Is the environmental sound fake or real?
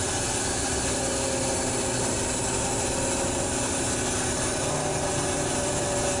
real